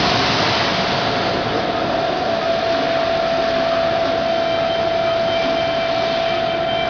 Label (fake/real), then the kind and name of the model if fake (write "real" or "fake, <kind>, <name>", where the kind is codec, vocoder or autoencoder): real